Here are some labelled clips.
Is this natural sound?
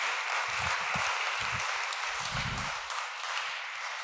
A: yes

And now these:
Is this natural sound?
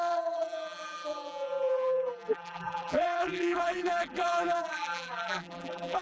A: no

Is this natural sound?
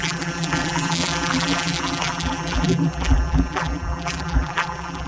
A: no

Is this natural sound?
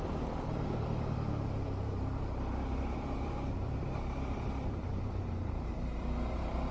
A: no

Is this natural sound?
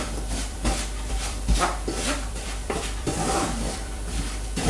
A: no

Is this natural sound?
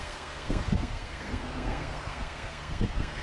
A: no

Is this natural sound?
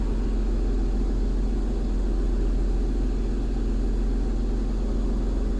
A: yes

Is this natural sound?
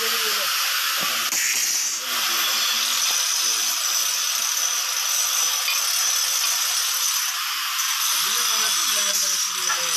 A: yes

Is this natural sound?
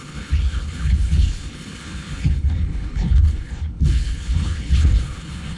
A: no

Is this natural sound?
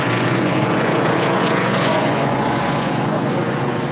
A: no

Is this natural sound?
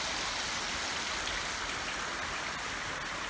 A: yes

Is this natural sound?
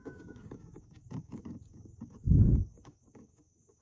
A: no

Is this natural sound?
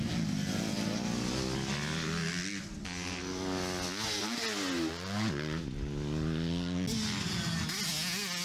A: yes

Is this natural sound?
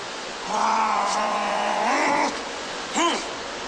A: no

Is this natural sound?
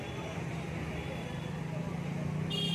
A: yes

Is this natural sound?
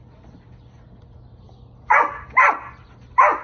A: yes